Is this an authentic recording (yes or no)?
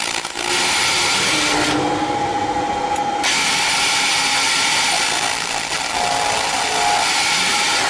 yes